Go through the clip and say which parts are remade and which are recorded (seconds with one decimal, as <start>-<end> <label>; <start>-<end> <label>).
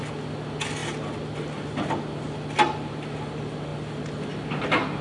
0.0-5.0 recorded